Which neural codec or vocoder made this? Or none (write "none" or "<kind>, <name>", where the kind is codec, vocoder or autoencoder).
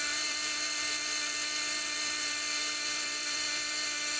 vocoder, BigVGAN v2